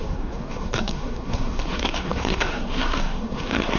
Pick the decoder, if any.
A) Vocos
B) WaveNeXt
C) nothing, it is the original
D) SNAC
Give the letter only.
D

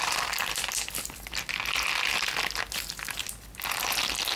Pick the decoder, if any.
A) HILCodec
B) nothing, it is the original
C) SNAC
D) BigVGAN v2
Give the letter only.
B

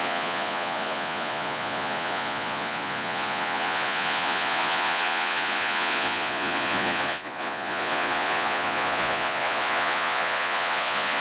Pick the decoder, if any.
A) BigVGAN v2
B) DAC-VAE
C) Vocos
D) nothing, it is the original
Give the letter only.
C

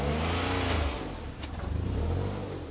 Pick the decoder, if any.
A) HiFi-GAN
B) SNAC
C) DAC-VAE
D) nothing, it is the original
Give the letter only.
D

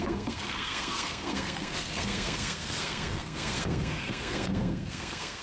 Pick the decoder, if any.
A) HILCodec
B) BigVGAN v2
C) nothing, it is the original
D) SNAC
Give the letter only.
D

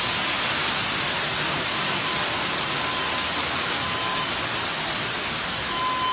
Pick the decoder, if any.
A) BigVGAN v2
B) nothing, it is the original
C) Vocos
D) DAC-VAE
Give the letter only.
B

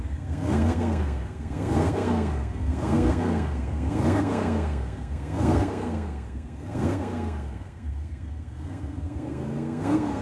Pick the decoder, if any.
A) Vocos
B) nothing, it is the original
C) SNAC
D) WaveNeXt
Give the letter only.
C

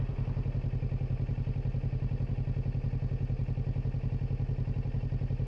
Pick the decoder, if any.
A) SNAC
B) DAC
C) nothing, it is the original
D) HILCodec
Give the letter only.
C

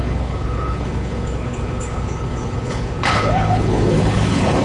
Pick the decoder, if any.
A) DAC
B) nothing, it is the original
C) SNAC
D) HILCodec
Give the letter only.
D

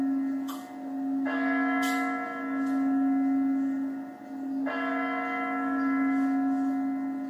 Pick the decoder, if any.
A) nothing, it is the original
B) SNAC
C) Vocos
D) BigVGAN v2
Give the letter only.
A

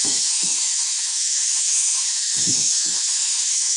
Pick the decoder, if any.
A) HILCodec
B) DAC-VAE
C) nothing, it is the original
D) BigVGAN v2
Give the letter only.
B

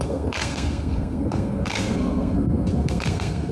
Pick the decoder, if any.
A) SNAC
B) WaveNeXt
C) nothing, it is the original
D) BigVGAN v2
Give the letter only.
A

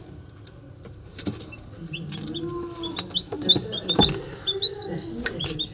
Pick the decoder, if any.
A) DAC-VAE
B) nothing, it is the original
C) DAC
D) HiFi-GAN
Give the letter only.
B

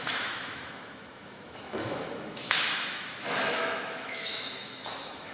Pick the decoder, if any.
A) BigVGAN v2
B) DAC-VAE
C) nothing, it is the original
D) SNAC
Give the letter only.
B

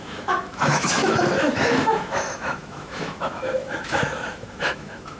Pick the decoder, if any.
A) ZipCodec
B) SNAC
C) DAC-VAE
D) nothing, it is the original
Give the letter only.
C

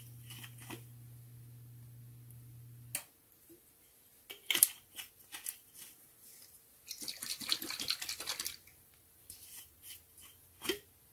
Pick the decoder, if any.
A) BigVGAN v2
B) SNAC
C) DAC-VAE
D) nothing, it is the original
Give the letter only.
D